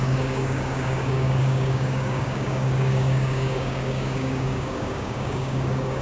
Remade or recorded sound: remade